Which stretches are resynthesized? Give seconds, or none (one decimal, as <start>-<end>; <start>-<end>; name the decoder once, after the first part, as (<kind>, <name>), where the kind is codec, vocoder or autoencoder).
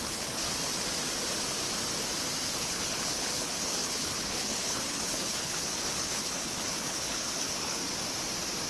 0.0-0.4 (codec, HILCodec); 2.6-7.8